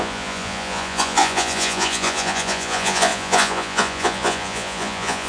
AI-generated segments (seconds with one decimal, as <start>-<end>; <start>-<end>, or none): 0.0-5.3